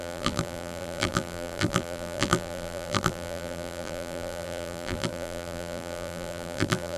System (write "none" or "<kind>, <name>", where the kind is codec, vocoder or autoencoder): vocoder, BigVGAN v2